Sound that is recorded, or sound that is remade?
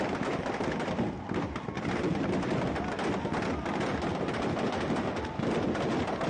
recorded